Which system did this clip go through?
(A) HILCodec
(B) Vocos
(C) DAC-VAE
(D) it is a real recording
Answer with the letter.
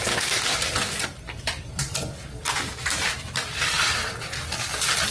D